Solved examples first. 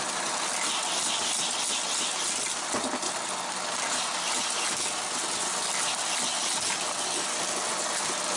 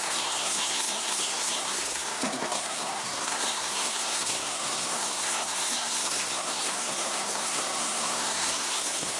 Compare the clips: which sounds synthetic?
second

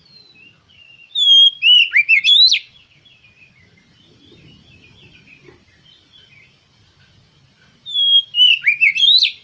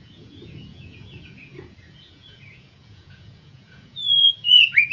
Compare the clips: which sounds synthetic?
second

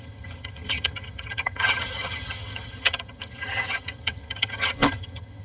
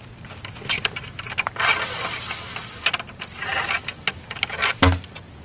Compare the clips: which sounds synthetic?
first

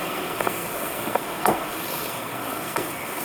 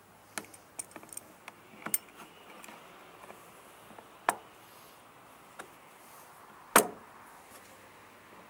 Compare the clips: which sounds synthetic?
first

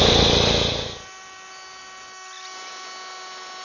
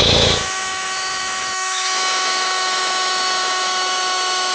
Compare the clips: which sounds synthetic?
second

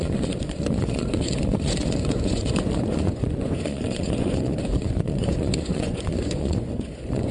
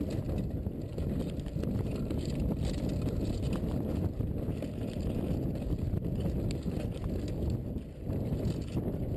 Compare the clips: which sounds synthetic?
first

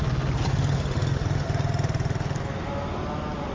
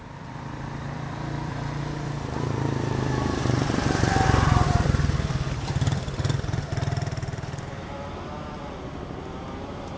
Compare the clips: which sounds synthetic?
second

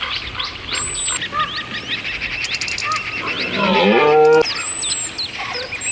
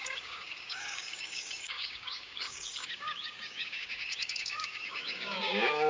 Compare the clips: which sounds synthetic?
second